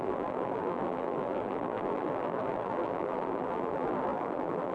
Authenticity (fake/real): fake